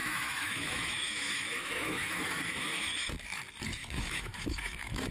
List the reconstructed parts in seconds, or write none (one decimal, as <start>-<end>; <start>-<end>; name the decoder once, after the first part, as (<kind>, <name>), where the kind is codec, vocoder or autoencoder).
0.0-3.1 (autoencoder, DAC-VAE); 3.8-5.1